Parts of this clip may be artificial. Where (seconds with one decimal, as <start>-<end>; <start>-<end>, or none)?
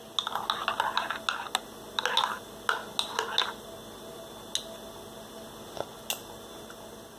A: none